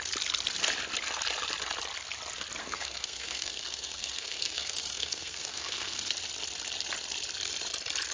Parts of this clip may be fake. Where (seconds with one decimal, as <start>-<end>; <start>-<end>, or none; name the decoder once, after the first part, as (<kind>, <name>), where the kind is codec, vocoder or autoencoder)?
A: 2.6-6.1 (codec, SNAC)